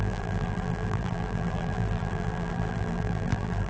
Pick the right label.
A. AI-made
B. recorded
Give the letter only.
A